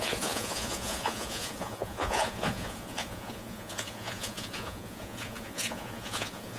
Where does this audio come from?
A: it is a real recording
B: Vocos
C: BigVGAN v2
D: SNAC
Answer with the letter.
B